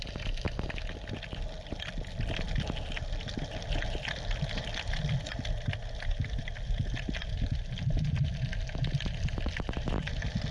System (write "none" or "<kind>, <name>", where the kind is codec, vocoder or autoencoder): none